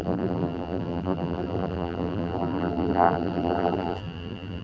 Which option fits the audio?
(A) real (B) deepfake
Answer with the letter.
B